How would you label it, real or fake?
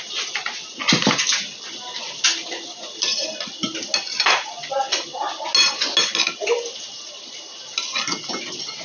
real